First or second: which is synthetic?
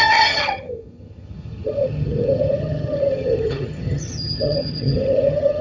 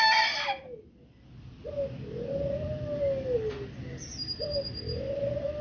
first